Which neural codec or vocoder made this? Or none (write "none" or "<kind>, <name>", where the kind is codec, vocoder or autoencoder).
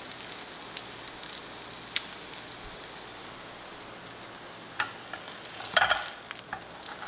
none